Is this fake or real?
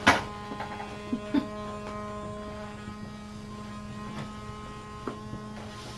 real